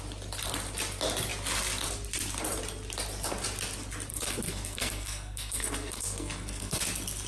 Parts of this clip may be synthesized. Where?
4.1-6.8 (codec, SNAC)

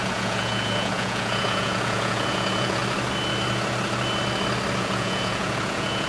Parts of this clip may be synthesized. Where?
0.0-2.8 (vocoder, Vocos); 4.8-6.1

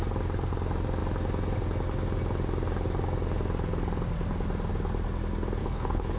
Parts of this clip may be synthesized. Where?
5.6-6.2 (codec, HILCodec)

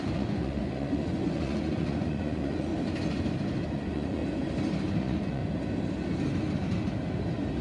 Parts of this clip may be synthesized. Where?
0.0-2.7 (vocoder, Vocos); 3.7-4.2; 5.0-5.4

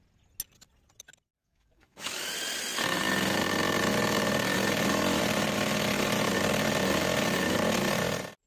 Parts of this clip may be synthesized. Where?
1.4-2.3 (codec, DAC)

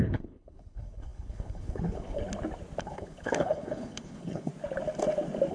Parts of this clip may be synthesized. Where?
0.0-2.2 (codec, HILCodec); 2.8-4.5

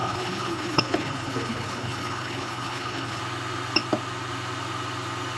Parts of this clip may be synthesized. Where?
0.0-3.2 (codec, HILCodec)

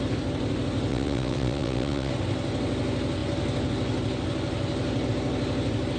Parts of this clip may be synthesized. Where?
0.9-2.1 (vocoder, WaveNeXt)